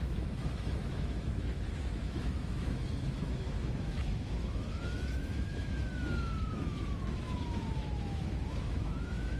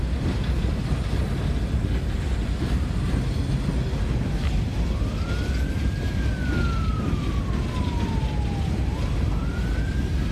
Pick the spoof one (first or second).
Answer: first